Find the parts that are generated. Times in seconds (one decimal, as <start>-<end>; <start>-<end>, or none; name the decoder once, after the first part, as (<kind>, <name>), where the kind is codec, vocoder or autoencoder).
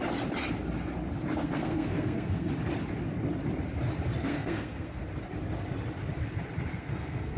1.4-2.5 (codec, SNAC); 4.2-5.0; 6.7-7.4